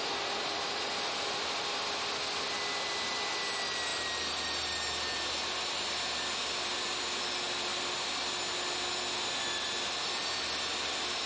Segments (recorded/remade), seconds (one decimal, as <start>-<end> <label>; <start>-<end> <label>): 0.0-11.3 recorded